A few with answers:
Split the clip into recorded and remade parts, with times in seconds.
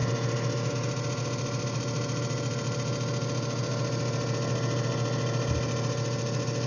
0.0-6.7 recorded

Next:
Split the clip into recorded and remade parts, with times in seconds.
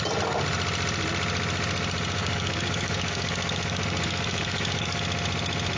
0.0-2.2 recorded; 2.2-5.0 remade; 5.0-5.8 recorded